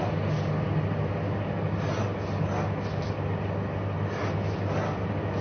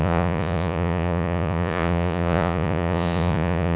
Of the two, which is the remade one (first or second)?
second